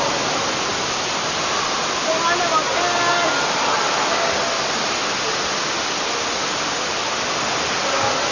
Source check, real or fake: real